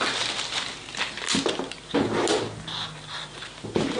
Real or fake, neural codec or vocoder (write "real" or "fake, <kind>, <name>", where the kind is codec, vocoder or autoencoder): real